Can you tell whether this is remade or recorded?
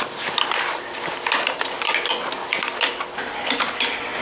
recorded